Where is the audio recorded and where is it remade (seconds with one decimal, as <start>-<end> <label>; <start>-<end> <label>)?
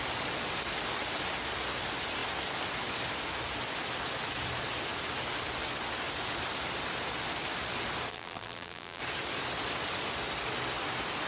0.0-8.1 recorded; 8.1-9.0 remade; 9.0-11.3 recorded